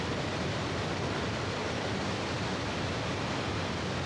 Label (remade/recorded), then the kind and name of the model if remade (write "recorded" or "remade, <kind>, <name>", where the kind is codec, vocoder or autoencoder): recorded